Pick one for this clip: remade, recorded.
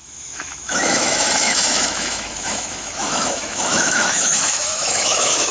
remade